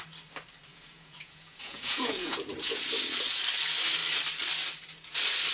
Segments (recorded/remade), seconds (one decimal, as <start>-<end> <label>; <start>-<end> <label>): 0.0-0.7 recorded; 0.7-2.9 remade; 2.9-5.5 recorded